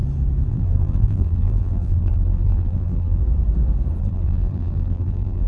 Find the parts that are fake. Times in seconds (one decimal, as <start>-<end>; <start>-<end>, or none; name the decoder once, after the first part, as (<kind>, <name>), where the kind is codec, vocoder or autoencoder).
0.5-3.2 (vocoder, BigVGAN v2); 4.0-5.5